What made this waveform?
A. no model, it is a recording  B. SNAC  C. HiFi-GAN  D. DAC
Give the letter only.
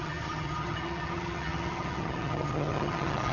C